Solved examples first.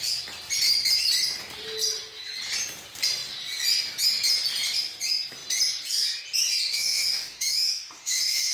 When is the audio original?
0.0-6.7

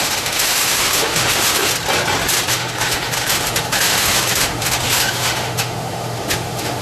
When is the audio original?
1.7-2.5

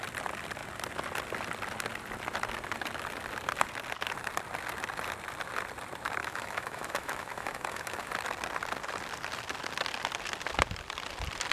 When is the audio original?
0.0-6.2; 8.1-11.5